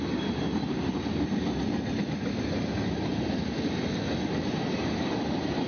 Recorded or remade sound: recorded